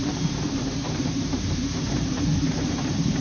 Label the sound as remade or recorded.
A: remade